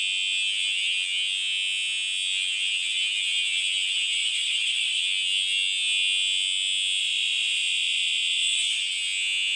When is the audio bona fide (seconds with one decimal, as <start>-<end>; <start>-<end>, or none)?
0.0-4.2; 5.0-7.0; 8.8-9.6

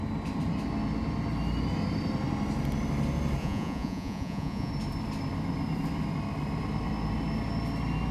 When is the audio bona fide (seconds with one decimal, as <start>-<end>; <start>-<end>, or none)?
0.0-3.4; 4.7-8.1

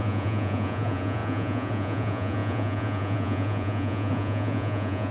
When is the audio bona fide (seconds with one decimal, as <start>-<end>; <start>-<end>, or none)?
none

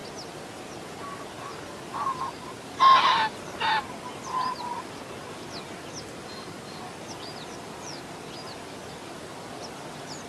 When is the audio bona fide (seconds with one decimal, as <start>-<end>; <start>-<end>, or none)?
0.0-10.3

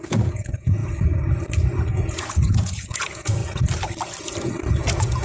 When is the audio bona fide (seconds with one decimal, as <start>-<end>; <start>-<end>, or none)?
0.8-1.9; 3.4-4.7

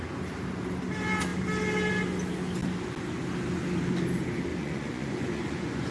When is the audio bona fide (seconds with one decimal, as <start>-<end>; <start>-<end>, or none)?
0.0-4.5

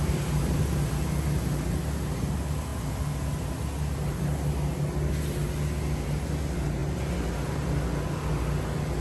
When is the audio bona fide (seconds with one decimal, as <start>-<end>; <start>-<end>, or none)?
0.0-9.0